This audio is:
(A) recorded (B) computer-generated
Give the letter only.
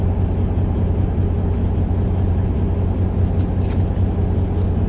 A